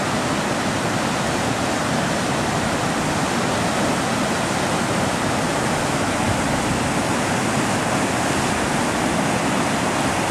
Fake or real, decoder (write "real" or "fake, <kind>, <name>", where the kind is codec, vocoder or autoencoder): real